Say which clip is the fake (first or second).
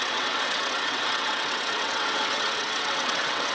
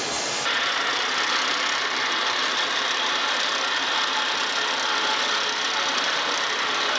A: first